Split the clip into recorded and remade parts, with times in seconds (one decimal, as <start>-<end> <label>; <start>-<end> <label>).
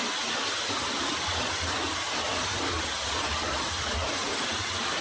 0.0-5.0 recorded